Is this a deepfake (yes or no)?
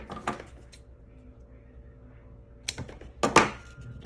no